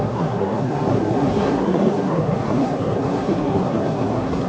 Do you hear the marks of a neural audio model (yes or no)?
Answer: yes